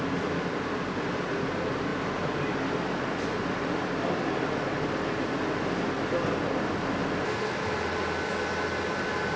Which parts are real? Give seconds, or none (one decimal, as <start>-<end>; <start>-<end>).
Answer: 0.0-9.4

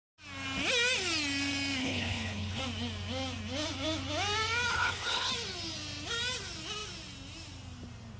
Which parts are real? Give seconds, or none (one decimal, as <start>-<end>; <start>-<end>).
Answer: 0.0-1.8; 2.6-4.7; 5.3-8.2

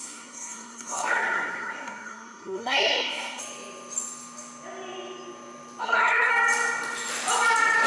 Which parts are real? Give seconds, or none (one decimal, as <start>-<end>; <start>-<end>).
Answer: 3.4-5.8; 6.3-7.9

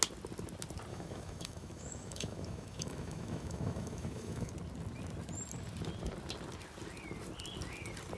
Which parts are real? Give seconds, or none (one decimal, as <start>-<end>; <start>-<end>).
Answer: 0.0-0.9; 4.5-8.2

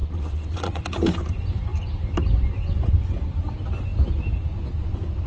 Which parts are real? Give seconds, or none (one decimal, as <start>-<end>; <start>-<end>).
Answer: 0.8-5.3

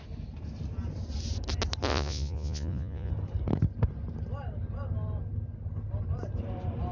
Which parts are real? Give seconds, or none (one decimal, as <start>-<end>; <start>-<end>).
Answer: 0.0-1.9; 3.1-6.9